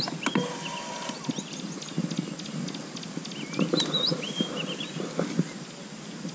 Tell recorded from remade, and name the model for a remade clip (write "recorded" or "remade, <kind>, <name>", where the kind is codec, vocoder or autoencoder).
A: recorded